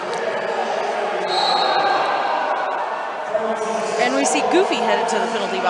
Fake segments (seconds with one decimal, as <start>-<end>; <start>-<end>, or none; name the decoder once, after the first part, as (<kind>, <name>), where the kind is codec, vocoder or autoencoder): none